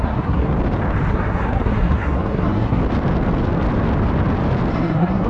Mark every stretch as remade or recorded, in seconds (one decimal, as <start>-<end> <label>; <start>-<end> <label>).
0.0-0.5 remade; 0.5-1.1 recorded; 1.1-2.8 remade; 2.8-4.7 recorded; 4.7-5.3 remade